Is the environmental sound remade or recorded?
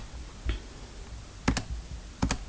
recorded